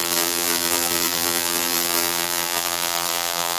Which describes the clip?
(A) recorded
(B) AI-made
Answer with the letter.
B